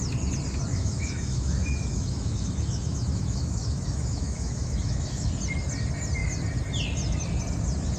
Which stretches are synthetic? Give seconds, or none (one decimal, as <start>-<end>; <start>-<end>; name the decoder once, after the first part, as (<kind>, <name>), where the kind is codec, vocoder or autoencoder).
0.7-5.3 (autoencoder, DAC-VAE)